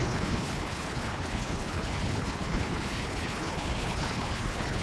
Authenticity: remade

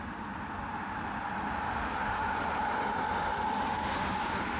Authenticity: recorded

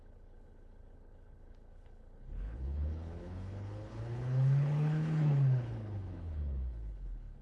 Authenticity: remade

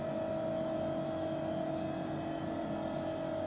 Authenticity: recorded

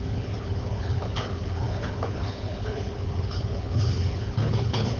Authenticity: remade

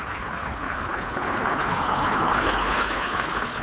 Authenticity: remade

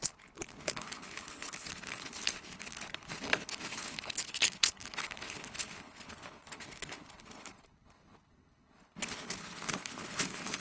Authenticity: remade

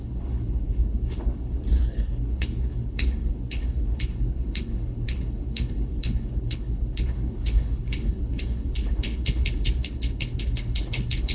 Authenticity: remade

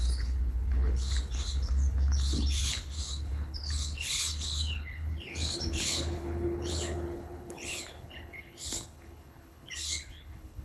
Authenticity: remade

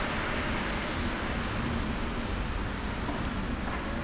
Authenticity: recorded